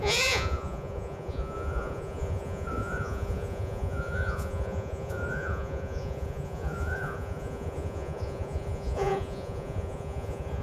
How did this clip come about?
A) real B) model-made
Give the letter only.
B